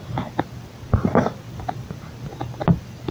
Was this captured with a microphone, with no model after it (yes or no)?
yes